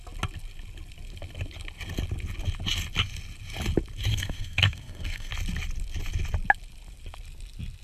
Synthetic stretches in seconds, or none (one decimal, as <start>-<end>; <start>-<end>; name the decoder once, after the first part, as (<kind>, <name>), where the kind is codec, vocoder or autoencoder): 4.1-5.3 (codec, SNAC)